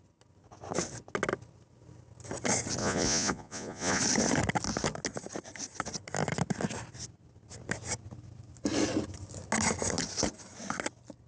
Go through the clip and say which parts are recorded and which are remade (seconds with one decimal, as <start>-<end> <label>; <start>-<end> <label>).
0.0-2.8 recorded; 2.8-4.0 remade; 4.0-11.3 recorded